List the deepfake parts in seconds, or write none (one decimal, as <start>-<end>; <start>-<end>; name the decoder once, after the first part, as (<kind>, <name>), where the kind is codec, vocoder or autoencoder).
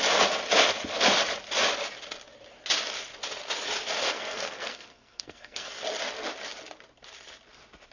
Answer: 4.0-5.7 (codec, SNAC)